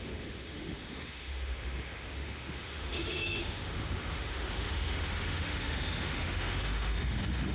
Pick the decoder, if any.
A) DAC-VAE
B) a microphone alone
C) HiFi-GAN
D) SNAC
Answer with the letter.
A